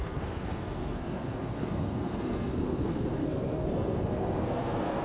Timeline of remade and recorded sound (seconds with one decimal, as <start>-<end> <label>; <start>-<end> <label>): 0.0-5.0 remade